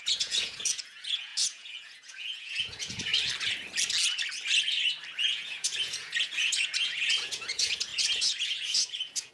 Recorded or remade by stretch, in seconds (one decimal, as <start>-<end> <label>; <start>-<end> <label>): 0.0-3.1 remade; 3.1-5.2 recorded; 5.2-9.3 remade